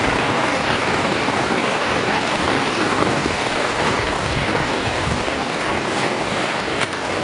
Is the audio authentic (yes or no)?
no